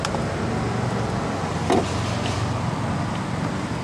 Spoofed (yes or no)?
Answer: no